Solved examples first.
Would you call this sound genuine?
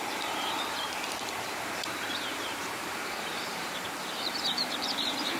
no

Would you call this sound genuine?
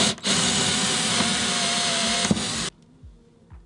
yes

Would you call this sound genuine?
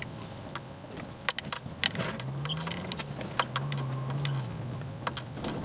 yes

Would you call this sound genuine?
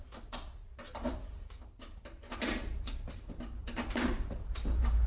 no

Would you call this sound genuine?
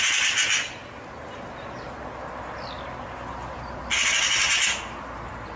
yes